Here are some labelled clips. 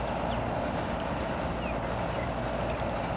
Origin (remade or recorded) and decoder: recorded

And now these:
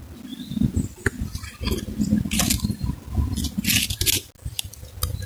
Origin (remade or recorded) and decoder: recorded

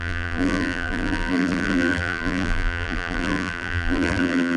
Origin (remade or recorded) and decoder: remade, vocoder, BigVGAN v2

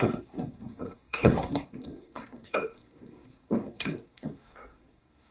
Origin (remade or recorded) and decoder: remade, codec, SNAC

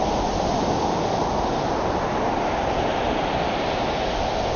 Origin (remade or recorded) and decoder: recorded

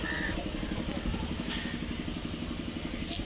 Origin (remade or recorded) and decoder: recorded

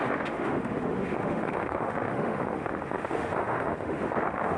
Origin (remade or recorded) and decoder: remade, autoencoder, DAC-VAE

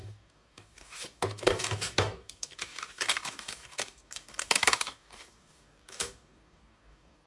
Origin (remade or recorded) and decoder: remade, codec, DAC